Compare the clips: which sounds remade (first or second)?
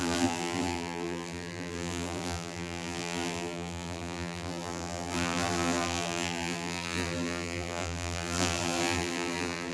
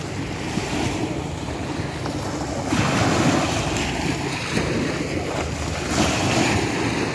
first